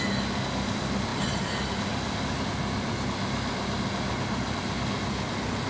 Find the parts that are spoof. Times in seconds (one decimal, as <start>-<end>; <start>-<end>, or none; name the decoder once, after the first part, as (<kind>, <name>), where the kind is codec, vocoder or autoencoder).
none